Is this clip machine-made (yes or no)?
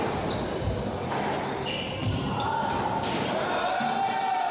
no